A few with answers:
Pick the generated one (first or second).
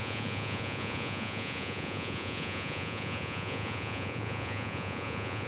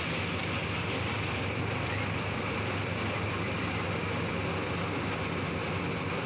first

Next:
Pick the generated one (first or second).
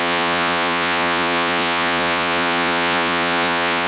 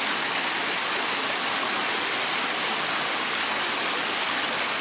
first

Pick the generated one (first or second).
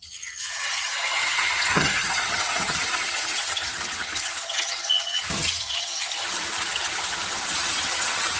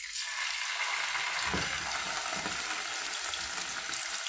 first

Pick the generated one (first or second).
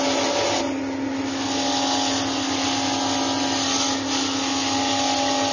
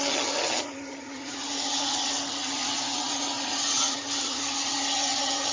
second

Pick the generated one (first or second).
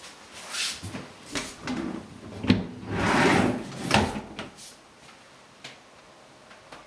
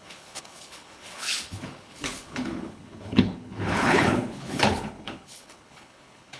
second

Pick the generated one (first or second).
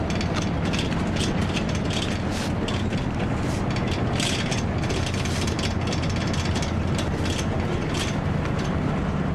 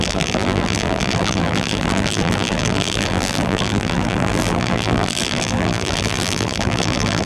second